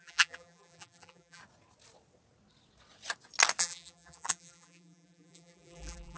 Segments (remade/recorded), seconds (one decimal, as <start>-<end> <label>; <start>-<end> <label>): 0.0-1.4 remade; 1.4-3.6 recorded; 3.6-6.2 remade